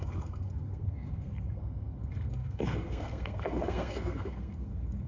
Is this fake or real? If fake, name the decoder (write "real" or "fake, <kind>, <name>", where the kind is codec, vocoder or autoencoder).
fake, codec, SNAC